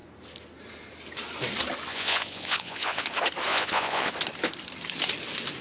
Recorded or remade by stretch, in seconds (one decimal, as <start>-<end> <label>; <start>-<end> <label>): 0.0-1.9 recorded; 1.9-3.1 remade; 3.1-3.5 recorded; 3.5-4.1 remade; 4.1-5.6 recorded